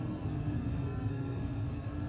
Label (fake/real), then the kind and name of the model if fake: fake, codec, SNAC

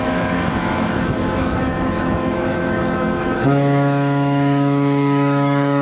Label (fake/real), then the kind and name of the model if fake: fake, autoencoder, DAC-VAE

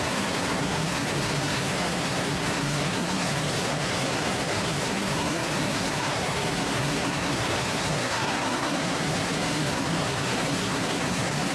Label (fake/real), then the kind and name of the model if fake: fake, codec, SNAC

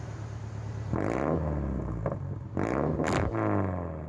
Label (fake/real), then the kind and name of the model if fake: real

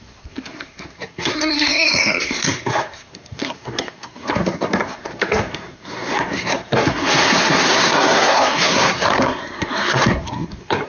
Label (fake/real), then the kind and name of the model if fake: fake, codec, SNAC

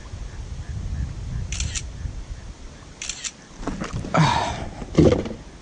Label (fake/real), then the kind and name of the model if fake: real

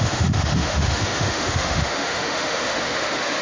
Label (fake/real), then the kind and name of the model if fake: fake, autoencoder, DAC-VAE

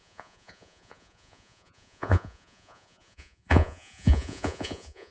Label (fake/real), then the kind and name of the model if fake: fake, vocoder, Vocos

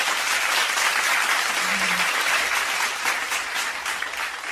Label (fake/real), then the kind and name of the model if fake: real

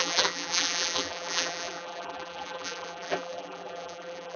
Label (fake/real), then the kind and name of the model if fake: fake, vocoder, BigVGAN v2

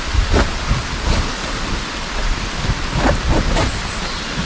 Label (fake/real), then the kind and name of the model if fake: real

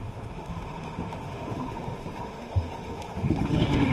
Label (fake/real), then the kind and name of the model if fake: fake, autoencoder, DAC-VAE